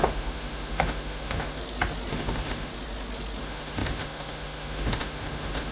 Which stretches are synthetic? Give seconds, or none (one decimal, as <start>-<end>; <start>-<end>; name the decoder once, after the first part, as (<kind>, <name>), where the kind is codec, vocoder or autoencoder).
0.0-1.6 (autoencoder, DAC-VAE); 2.1-2.7; 3.4-5.7